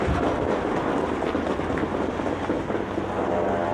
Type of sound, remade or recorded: recorded